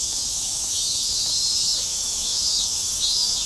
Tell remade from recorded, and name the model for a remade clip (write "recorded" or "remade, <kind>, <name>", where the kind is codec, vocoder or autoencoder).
remade, autoencoder, DAC-VAE